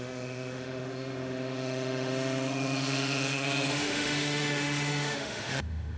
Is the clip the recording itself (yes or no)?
no